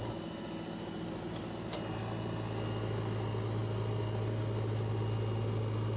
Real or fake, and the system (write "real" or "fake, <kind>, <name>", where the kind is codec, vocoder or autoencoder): real